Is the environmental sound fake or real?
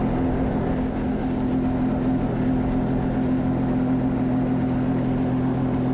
real